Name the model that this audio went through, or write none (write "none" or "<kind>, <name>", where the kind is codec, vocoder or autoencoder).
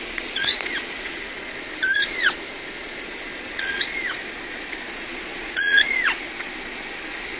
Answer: vocoder, Vocos